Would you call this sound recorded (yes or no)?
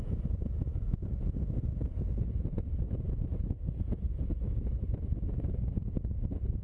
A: no